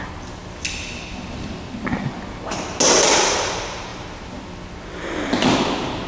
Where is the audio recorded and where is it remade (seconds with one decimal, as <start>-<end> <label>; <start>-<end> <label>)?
0.0-6.1 recorded